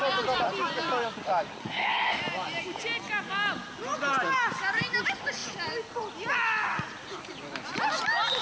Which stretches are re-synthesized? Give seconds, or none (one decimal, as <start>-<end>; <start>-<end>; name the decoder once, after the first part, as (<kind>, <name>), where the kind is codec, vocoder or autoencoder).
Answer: 1.6-2.2 (codec, SNAC)